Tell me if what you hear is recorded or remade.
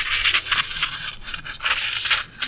recorded